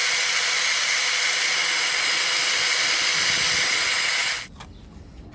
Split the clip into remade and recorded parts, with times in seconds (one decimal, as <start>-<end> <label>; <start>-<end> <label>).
0.0-3.2 remade; 3.2-5.3 recorded